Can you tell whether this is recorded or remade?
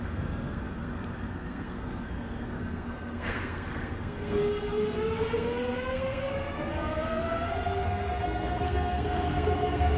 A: remade